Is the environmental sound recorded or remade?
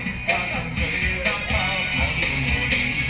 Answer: recorded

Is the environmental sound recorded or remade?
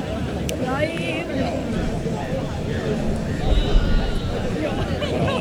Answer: remade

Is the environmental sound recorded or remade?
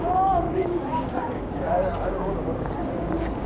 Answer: remade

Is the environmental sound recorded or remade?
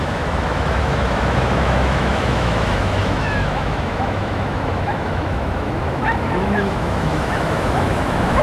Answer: remade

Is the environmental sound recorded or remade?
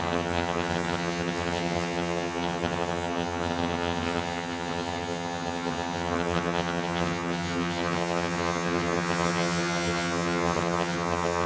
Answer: remade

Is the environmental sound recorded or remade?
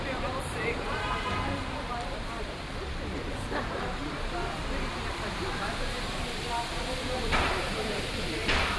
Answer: remade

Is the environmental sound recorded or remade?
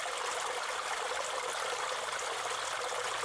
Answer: recorded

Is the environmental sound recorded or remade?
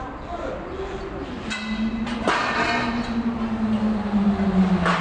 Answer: recorded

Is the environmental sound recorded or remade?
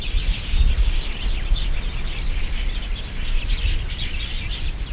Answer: recorded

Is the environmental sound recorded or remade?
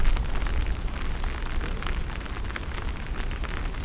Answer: recorded